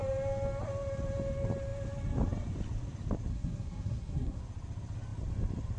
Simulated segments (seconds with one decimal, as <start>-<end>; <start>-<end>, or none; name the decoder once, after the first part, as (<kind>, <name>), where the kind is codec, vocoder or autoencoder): 3.3-4.4 (codec, SNAC)